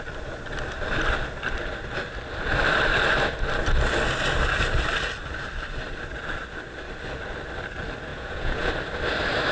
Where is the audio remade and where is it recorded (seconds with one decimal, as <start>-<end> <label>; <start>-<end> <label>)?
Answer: 0.0-8.1 recorded; 8.1-8.7 remade; 8.7-9.5 recorded